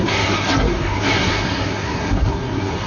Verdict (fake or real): fake